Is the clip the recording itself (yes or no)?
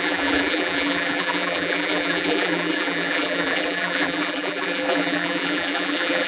no